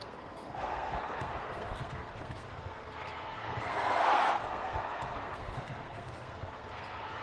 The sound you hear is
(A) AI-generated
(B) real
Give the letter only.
A